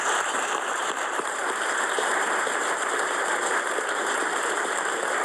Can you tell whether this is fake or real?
fake